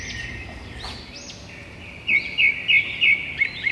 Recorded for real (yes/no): yes